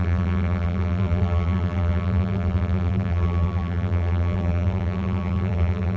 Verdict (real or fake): fake